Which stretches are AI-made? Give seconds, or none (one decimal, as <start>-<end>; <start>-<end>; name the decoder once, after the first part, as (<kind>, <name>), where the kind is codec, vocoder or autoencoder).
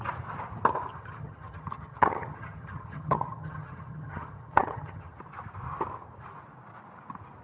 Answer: 0.9-5.2 (vocoder, HiFi-GAN)